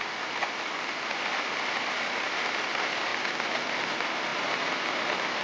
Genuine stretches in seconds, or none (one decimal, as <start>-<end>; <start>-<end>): 0.0-5.4